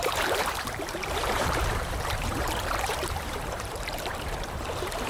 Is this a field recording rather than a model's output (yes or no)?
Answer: no